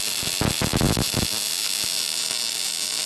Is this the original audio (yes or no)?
yes